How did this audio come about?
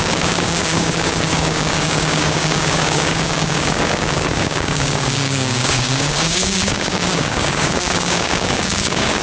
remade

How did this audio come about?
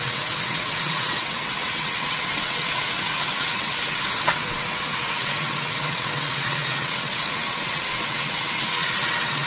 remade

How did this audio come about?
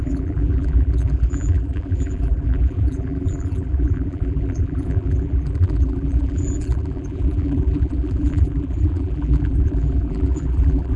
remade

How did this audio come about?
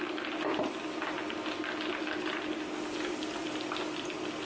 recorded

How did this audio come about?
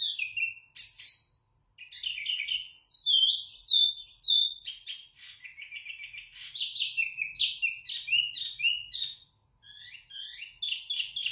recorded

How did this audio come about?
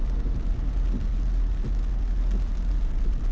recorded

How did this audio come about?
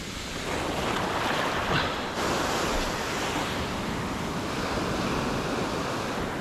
recorded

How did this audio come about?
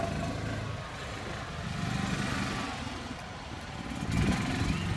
recorded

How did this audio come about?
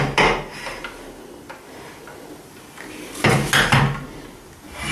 recorded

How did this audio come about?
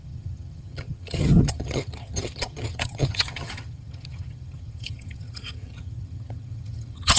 remade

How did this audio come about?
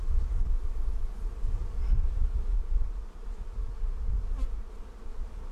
recorded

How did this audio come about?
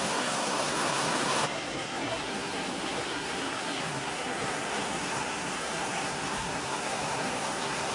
remade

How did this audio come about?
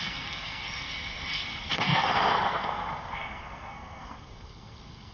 remade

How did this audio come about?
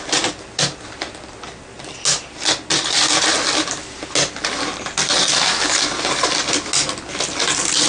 recorded